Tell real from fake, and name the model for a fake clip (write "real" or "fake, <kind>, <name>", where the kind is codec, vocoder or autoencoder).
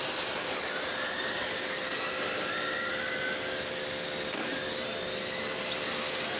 real